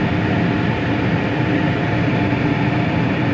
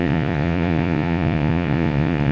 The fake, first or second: second